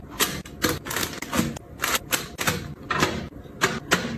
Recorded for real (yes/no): yes